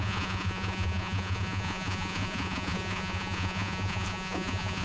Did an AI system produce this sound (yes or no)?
yes